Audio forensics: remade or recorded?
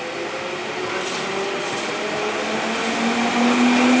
recorded